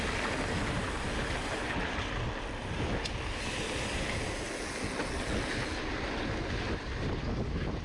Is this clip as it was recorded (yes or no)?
yes